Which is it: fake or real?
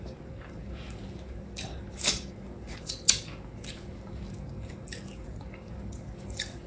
fake